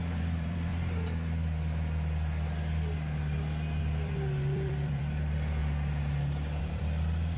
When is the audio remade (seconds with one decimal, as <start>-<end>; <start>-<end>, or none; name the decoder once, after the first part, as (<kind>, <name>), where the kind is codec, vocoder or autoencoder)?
0.0-0.7 (vocoder, BigVGAN v2); 3.8-5.6; 6.6-7.4